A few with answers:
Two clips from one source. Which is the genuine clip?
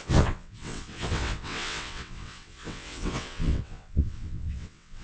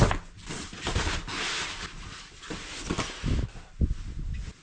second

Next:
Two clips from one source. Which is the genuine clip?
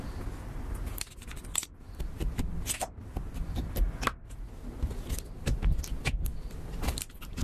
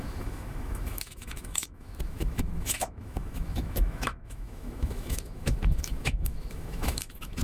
first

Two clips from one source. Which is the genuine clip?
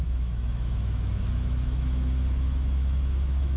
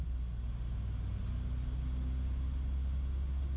second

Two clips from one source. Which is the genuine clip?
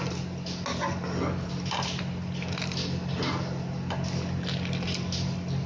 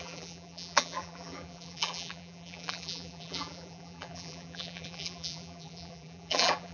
first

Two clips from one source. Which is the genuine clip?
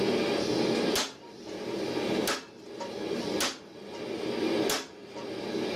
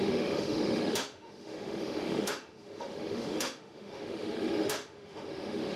first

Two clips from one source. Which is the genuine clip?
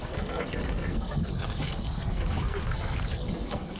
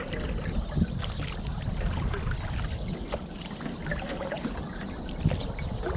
second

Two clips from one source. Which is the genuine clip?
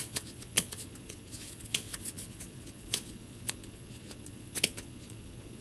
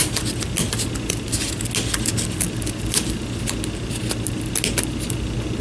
second